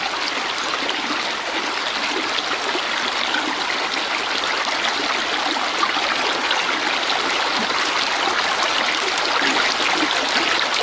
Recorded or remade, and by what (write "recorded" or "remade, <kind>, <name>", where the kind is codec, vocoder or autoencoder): recorded